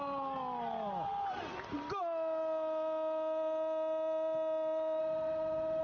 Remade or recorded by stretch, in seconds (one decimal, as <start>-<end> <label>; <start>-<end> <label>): 0.0-5.0 recorded; 5.0-5.8 remade